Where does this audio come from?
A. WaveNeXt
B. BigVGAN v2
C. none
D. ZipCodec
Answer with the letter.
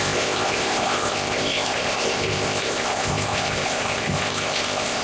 D